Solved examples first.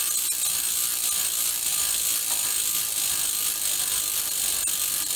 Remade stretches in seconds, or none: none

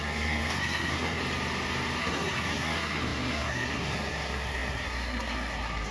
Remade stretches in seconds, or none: 0.0-1.2 (codec, SNAC); 2.0-5.9

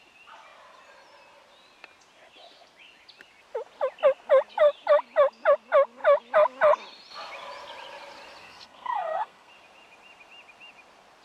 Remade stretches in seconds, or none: 8.4-9.5 (codec, SNAC)